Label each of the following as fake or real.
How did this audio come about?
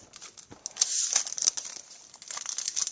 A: real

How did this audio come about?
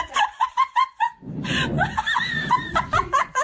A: fake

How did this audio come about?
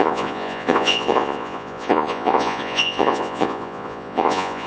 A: fake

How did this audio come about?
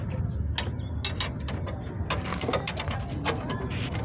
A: real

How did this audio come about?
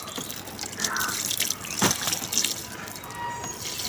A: real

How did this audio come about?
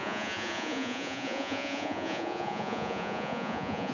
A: fake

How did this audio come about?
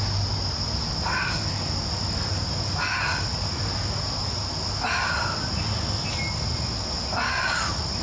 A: real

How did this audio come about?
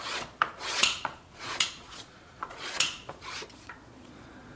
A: fake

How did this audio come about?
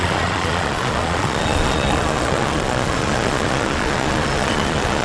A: fake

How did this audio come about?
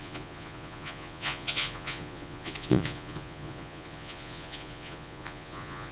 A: fake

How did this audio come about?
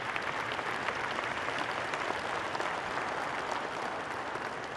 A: real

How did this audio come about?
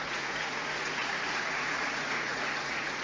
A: fake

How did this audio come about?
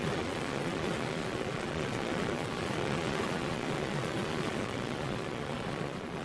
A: fake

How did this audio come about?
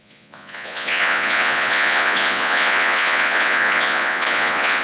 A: fake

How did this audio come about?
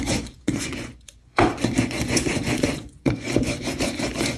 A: fake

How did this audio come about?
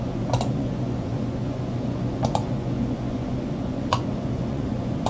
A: fake